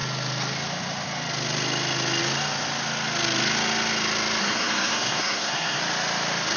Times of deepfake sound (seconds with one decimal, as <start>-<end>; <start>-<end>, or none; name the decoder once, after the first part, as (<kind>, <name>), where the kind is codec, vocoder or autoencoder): 4.4-5.8 (codec, SNAC)